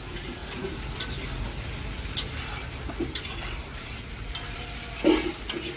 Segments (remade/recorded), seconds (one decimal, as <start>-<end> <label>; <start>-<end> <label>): 0.0-5.8 recorded